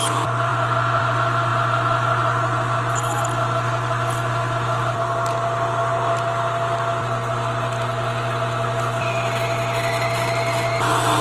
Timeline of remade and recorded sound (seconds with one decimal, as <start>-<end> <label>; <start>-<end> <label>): 0.0-11.2 recorded